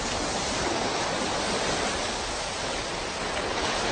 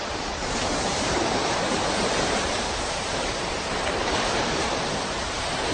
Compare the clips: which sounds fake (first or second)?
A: second